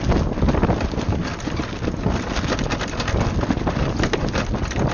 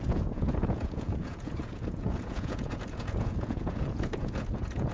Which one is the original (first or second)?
first